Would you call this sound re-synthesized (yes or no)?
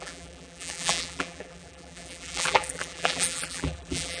yes